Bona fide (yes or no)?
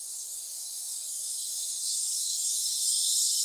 no